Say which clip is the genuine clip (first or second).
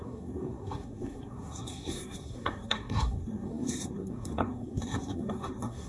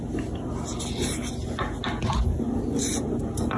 second